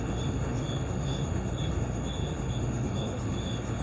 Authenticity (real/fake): fake